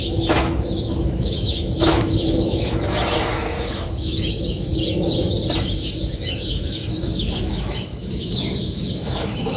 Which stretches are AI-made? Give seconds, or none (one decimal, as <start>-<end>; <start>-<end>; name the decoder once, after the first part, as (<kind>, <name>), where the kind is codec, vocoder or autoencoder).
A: 0.0-4.7 (autoencoder, DAC-VAE); 5.6-9.6